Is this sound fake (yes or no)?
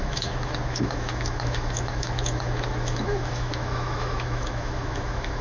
yes